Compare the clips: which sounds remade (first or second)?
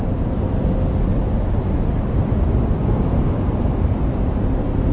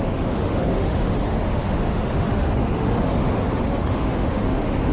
second